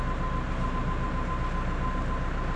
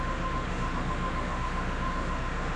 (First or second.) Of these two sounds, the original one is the first